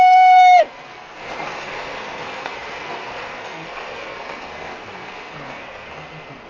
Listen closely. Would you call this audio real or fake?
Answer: fake